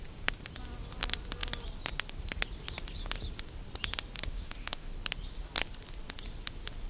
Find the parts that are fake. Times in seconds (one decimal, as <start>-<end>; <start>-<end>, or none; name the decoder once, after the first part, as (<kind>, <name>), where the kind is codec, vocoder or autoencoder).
4.3-4.9 (autoencoder, DAC-VAE)